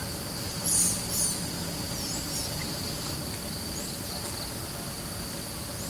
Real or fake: fake